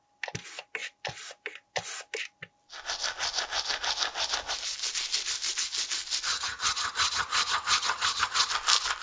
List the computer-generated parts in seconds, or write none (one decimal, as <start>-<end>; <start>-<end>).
6.3-8.5